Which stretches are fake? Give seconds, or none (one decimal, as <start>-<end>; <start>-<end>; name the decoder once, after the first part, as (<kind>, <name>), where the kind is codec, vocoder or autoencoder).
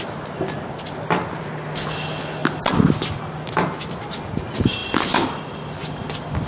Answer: none